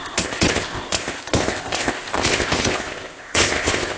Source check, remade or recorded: remade